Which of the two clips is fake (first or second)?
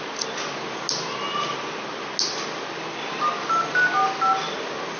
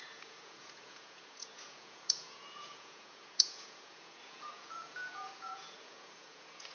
second